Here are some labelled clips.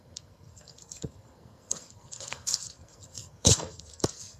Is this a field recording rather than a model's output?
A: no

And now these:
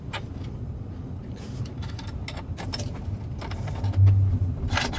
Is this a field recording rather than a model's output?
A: yes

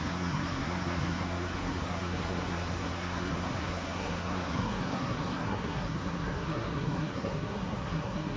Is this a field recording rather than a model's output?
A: no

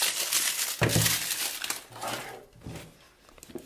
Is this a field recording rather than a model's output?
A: yes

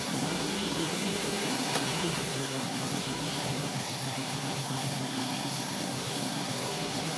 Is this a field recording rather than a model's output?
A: no